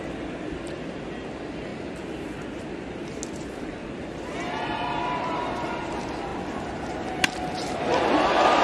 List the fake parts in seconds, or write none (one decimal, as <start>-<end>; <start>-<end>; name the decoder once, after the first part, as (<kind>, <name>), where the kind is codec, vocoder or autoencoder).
none